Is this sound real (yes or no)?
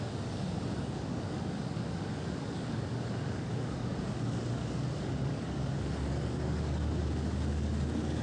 no